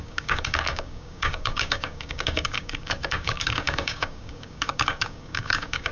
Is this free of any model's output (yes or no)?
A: no